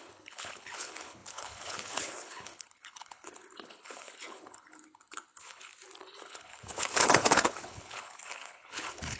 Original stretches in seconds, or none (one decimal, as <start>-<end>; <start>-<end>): 5.7-6.2